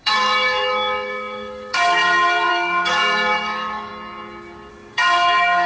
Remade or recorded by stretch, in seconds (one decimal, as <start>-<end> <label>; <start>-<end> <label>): 0.0-3.9 remade; 3.9-4.7 recorded; 4.7-5.7 remade